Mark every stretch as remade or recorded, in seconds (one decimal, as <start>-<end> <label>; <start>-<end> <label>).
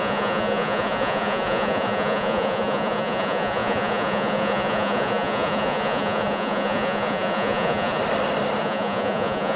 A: 0.0-8.0 remade; 8.0-8.6 recorded; 8.6-9.6 remade